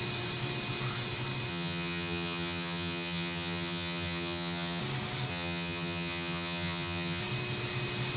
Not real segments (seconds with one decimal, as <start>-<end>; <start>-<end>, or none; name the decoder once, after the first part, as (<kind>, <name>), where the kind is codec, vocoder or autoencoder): 1.5-4.8 (vocoder, HiFi-GAN); 5.3-7.2

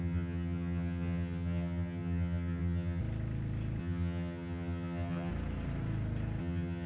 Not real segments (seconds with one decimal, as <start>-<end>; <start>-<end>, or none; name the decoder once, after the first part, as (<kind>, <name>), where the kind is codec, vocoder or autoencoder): 0.0-3.0 (vocoder, HiFi-GAN); 3.8-5.3; 6.4-6.9